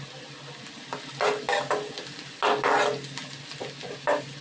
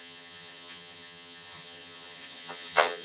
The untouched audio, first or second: first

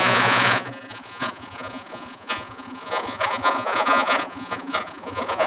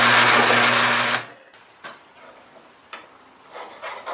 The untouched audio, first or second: second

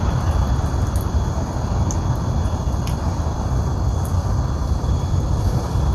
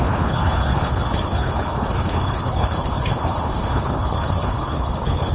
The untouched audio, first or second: first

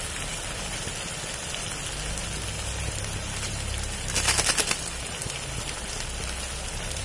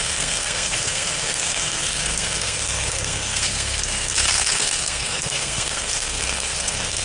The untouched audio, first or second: first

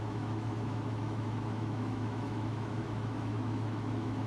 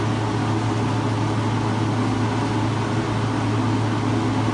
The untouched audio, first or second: second